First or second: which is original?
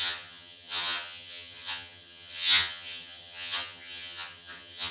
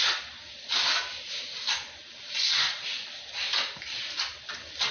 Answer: second